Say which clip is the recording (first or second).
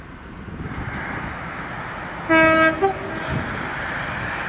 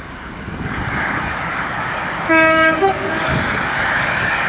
first